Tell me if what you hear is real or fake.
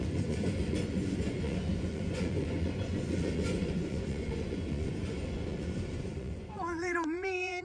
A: fake